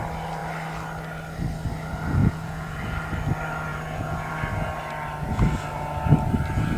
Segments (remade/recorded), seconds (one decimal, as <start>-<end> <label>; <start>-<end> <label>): 0.0-2.2 recorded; 2.2-2.8 remade; 2.8-3.7 recorded; 3.7-4.3 remade; 4.3-6.8 recorded